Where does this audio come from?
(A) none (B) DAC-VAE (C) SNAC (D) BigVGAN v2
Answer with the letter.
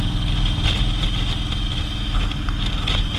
A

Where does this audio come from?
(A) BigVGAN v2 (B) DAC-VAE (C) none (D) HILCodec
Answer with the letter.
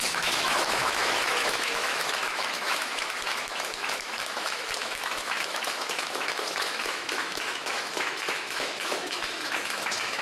B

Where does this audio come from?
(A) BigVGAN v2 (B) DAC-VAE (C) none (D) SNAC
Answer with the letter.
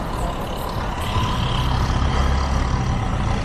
C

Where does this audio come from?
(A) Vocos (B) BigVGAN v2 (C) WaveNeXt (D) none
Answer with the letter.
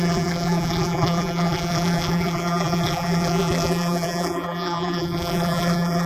B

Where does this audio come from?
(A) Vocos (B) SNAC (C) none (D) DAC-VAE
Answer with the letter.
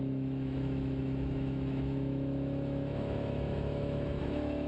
D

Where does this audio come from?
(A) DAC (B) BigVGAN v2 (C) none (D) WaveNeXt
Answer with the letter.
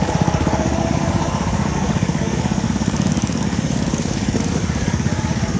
A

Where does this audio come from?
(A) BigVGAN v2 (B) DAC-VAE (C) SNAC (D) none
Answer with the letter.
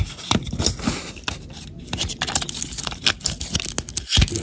D